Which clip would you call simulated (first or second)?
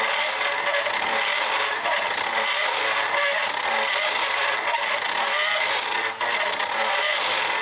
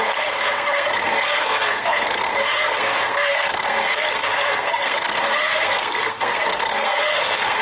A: second